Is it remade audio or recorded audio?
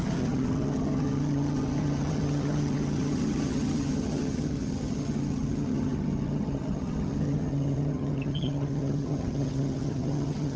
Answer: remade